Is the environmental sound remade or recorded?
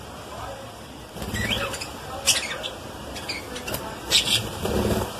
recorded